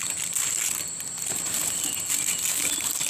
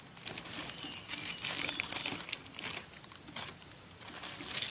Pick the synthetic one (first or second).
first